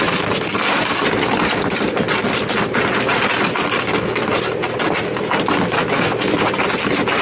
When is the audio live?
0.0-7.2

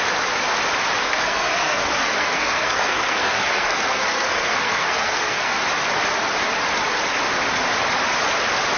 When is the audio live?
0.0-1.0; 5.6-8.8

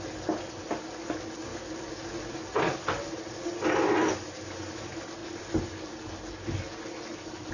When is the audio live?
0.0-7.5

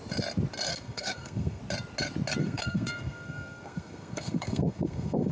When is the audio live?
0.0-0.7; 1.6-2.4